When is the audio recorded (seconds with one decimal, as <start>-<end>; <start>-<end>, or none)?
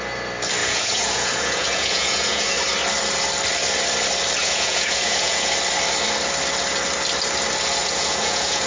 0.0-0.6; 2.5-4.4; 5.5-7.8